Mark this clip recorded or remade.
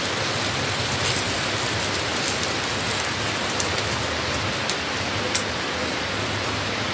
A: recorded